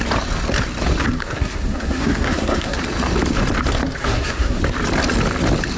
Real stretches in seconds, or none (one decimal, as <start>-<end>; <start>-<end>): 0.0-1.2; 2.8-4.0; 4.6-5.8